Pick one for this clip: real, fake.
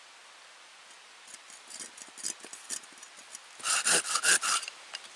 real